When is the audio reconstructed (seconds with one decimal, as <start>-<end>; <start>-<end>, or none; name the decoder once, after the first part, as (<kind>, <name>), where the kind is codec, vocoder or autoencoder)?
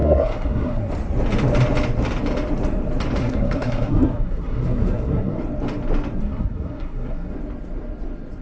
0.0-0.9 (codec, SNAC); 3.2-5.4; 6.2-7.3